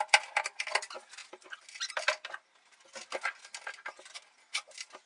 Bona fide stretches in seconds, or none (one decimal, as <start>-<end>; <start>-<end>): 0.0-5.1